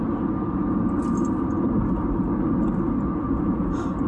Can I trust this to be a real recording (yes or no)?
yes